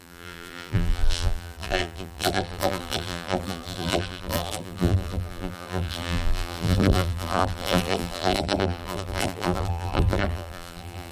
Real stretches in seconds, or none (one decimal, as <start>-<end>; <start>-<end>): none